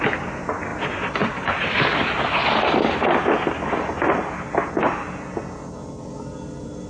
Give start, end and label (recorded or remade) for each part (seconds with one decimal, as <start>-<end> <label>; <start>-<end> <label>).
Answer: 0.0-6.9 recorded